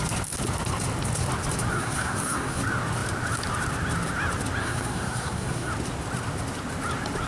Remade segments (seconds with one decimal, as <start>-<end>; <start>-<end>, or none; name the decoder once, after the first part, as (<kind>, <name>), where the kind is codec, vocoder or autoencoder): 1.7-2.6 (codec, SNAC); 4.6-5.7